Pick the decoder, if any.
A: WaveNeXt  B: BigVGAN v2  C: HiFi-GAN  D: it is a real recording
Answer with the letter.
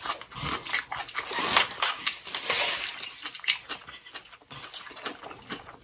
D